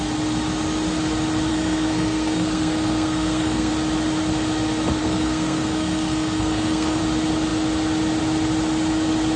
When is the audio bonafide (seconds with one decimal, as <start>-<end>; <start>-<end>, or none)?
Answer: 0.0-1.5; 3.7-5.0; 7.0-9.4